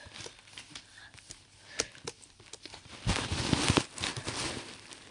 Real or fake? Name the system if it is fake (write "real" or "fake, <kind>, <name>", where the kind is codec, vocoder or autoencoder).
fake, vocoder, BigVGAN v2